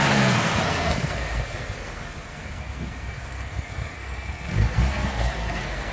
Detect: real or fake fake